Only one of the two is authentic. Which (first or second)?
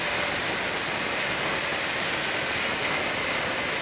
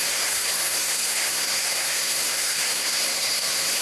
first